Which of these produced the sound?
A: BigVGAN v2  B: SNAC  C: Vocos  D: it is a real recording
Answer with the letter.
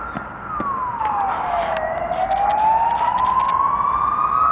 D